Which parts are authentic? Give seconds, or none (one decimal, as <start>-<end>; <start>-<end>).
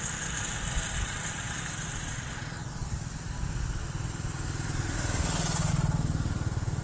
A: 0.0-6.8